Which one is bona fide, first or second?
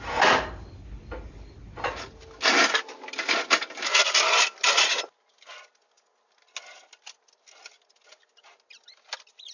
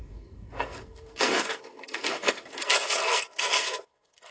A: first